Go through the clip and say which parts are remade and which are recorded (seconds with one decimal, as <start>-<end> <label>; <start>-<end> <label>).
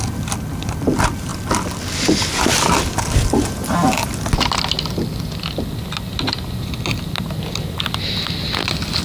0.0-9.0 recorded